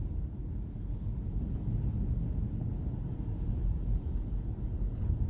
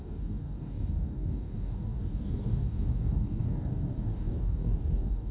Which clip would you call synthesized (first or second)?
second